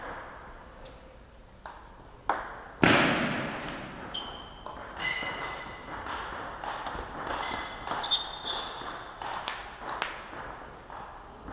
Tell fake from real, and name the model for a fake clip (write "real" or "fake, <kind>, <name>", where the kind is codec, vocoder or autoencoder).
real